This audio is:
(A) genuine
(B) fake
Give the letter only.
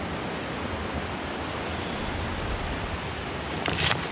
A